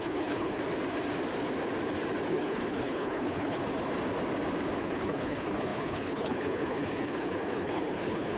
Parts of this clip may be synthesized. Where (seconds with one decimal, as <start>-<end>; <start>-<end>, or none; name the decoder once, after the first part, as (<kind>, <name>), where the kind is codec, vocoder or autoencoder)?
0.0-0.6 (codec, HILCodec); 2.3-3.6; 4.8-8.4

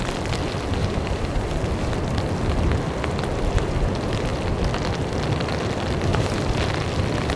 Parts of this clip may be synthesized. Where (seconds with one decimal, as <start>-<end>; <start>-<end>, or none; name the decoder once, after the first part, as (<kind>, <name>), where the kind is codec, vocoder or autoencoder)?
0.8-1.6 (vocoder, BigVGAN v2); 6.1-6.7

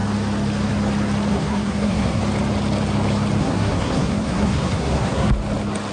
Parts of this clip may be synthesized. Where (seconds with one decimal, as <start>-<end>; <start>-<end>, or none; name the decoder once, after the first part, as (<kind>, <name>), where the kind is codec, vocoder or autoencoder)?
1.3-2.2 (codec, SNAC); 3.4-5.3